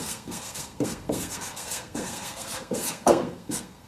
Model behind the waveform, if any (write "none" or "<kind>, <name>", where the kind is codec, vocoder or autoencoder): codec, SNAC